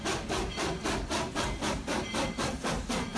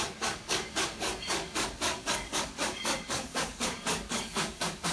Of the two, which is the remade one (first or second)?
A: second